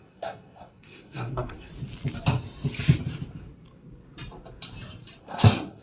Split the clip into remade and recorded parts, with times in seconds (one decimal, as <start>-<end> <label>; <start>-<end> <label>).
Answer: 0.0-1.7 remade; 1.7-5.2 recorded; 5.2-5.8 remade